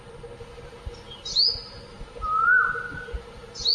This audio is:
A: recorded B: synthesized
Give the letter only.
A